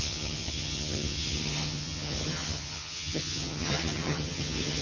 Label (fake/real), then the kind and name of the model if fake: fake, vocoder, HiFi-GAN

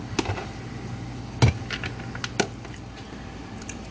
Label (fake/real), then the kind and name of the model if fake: real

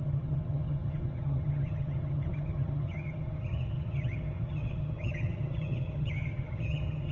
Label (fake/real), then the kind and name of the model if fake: fake, vocoder, HiFi-GAN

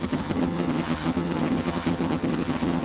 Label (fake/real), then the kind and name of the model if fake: fake, vocoder, HiFi-GAN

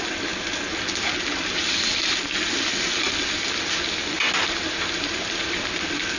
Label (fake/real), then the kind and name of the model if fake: real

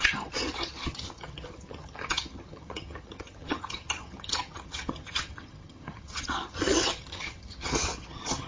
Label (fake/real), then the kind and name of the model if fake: fake, vocoder, HiFi-GAN